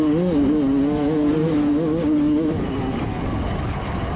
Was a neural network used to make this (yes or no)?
no